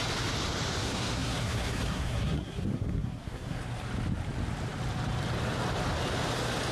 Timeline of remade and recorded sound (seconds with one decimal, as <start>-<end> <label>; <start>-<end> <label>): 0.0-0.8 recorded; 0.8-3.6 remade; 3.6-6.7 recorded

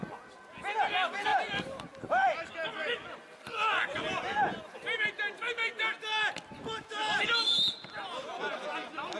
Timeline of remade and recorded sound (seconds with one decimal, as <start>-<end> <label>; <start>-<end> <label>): 0.0-1.3 recorded; 1.3-2.5 remade; 2.5-9.2 recorded

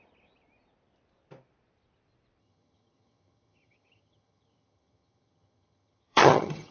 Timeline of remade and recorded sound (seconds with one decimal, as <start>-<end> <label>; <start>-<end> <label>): 0.0-2.4 recorded; 2.4-6.7 remade

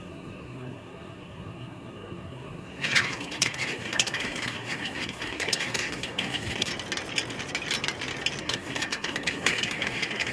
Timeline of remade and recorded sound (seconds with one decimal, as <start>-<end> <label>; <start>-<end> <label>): 0.0-6.7 remade; 6.7-8.4 recorded; 8.4-10.3 remade